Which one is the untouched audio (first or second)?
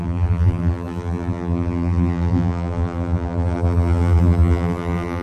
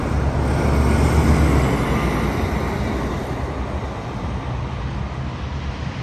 second